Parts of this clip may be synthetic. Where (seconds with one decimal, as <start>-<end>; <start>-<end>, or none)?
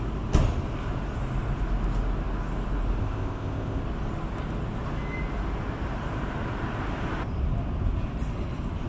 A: 3.0-3.8